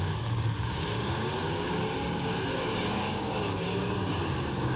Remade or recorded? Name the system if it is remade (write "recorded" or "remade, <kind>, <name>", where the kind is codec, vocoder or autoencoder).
remade, codec, DAC